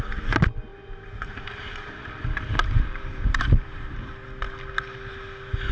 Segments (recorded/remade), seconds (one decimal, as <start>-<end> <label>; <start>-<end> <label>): 0.0-0.7 recorded; 0.7-4.1 remade; 4.1-5.7 recorded